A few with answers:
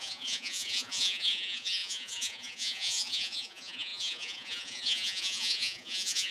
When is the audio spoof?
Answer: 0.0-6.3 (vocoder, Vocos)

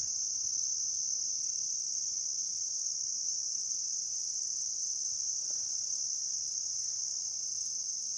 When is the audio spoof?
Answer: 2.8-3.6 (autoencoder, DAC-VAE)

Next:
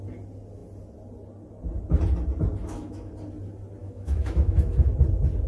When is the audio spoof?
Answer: 2.6-3.1 (autoencoder, DAC-VAE); 3.8-4.9

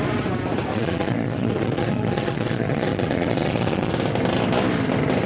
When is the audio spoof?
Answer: 0.7-3.9 (vocoder, Vocos)

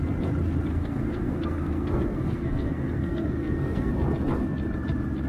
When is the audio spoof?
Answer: 0.7-3.9 (codec, SNAC)

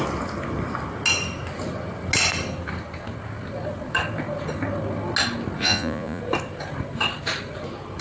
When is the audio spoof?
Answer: 5.6-6.2 (vocoder, Vocos)

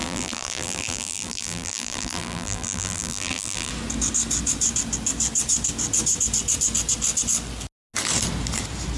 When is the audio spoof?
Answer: 0.0-3.7 (vocoder, BigVGAN v2)

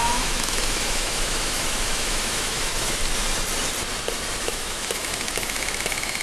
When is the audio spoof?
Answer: 0.0-3.0 (autoencoder, DAC-VAE); 4.4-6.2